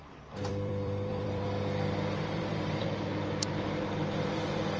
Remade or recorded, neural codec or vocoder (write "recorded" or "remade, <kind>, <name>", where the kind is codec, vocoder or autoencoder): remade, vocoder, BigVGAN v2